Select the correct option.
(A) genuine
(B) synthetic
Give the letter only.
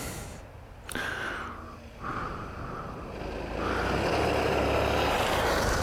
A